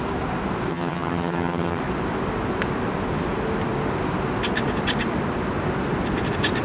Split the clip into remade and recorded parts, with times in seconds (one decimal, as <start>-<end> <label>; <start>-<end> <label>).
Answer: 0.0-0.7 recorded; 0.7-1.8 remade; 1.8-6.6 recorded